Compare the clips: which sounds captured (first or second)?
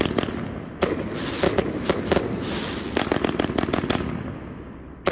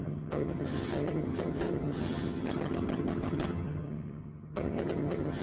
first